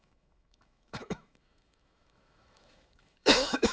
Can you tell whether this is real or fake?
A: fake